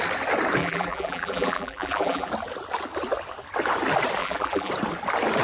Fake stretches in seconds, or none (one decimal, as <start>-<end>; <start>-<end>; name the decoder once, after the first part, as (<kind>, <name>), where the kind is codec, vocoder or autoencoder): 0.6-2.3 (vocoder, BigVGAN v2); 4.2-4.7